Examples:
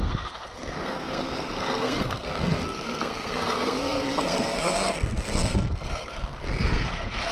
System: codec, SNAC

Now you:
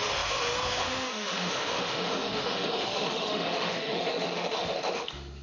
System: autoencoder, DAC-VAE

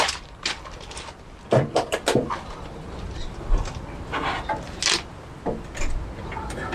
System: none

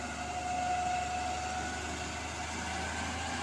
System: none